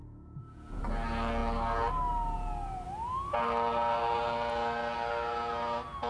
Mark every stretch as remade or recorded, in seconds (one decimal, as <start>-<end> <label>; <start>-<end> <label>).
0.0-0.8 remade; 0.8-6.1 recorded